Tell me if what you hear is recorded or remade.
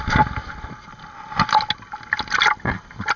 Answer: recorded